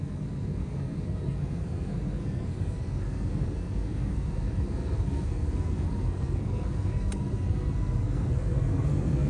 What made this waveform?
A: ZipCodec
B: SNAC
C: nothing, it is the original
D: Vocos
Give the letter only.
B